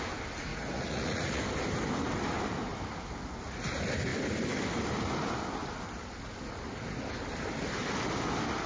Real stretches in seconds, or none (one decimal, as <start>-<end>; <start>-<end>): 0.0-0.5; 1.4-8.7